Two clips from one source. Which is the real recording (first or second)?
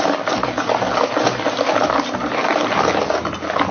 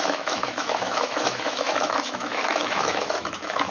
first